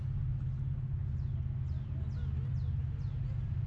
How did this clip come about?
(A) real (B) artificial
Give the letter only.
A